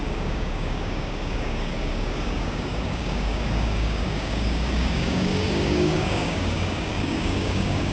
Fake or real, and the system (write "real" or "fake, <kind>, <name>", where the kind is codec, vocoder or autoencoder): fake, codec, DAC